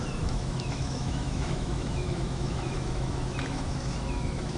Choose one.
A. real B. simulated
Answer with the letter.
B